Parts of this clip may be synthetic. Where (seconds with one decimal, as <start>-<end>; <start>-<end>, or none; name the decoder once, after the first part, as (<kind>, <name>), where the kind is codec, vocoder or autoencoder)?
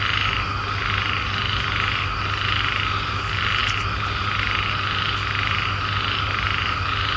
none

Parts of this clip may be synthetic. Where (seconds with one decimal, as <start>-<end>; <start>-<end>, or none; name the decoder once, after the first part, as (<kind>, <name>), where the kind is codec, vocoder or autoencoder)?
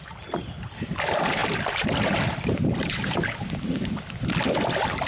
1.4-4.5 (vocoder, BigVGAN v2)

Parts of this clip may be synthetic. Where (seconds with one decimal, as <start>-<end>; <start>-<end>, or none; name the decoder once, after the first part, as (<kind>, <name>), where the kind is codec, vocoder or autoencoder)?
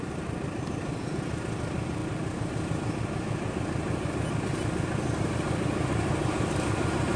0.0-2.0 (vocoder, BigVGAN v2); 5.2-7.2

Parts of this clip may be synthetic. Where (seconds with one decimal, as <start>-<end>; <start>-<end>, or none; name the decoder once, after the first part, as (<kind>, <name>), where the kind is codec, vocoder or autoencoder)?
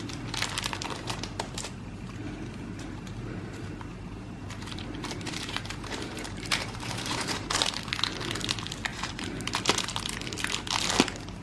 3.9-7.5 (vocoder, BigVGAN v2); 8.9-9.5